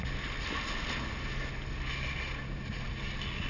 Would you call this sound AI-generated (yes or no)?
no